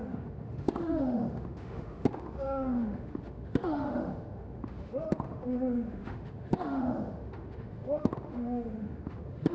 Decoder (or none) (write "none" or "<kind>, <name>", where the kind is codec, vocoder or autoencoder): autoencoder, DAC-VAE